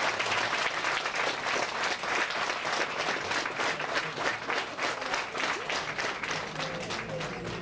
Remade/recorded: recorded